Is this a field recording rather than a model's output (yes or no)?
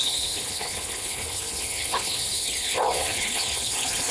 no